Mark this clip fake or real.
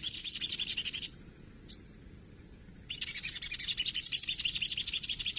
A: real